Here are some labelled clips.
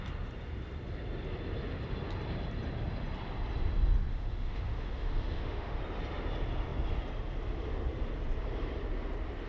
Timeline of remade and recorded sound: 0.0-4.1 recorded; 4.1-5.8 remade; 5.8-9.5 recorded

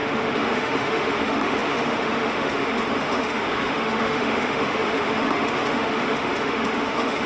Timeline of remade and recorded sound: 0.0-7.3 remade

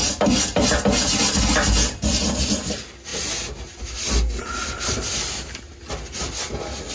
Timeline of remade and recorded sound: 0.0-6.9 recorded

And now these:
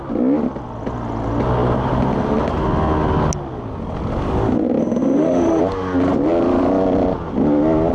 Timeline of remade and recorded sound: 0.0-4.8 recorded; 4.8-5.6 remade; 5.6-7.9 recorded

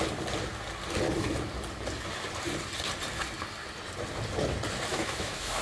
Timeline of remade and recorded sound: 0.0-4.9 recorded; 4.9-5.6 remade